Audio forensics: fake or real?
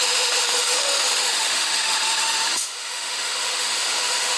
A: fake